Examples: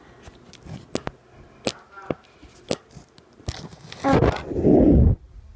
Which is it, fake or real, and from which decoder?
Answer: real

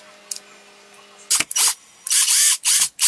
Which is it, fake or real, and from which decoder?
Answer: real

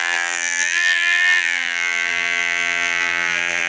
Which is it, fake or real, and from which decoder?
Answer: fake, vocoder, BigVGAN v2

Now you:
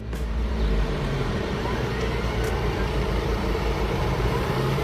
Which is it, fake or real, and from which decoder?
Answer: fake, vocoder, BigVGAN v2